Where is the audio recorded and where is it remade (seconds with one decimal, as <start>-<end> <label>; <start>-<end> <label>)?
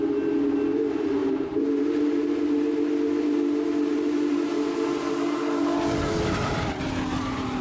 0.0-1.2 recorded; 1.2-1.8 remade; 1.8-7.6 recorded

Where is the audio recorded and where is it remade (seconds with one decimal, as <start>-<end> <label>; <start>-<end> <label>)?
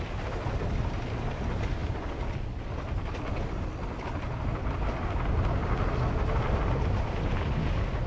0.0-8.1 recorded